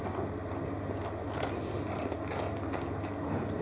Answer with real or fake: real